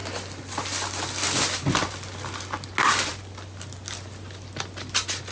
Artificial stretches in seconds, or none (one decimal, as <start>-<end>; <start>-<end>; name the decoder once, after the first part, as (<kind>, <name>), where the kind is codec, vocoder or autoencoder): none